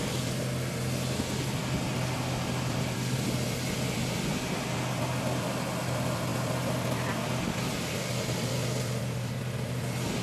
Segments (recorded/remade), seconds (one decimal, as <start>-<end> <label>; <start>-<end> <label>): 0.0-10.2 recorded